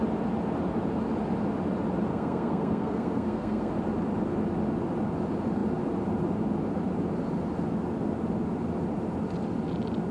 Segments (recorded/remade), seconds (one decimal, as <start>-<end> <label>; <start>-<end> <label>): 0.0-2.1 recorded; 2.1-3.7 remade; 3.7-10.1 recorded